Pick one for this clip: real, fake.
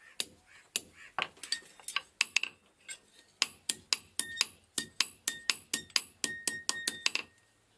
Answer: real